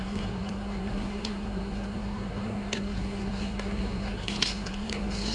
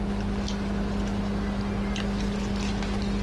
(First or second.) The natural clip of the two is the second